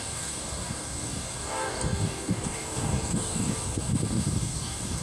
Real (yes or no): no